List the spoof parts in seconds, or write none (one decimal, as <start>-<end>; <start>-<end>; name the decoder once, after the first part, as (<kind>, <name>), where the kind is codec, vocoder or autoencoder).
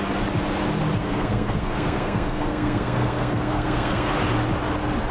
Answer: 1.0-4.1 (codec, SNAC)